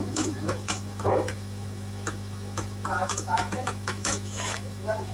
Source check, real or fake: fake